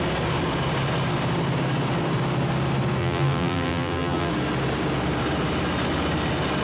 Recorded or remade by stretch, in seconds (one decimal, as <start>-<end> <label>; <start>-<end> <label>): 0.0-3.0 recorded; 3.0-4.3 remade; 4.3-6.6 recorded